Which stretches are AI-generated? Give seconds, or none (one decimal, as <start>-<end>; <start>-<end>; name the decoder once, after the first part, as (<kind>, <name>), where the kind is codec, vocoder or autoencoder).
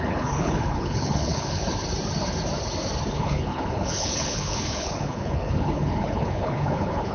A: 0.0-1.6 (codec, HILCodec); 3.1-7.1